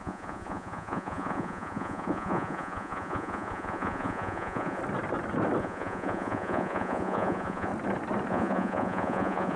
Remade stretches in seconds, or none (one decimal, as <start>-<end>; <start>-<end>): 0.0-4.8; 5.6-7.7; 8.3-9.6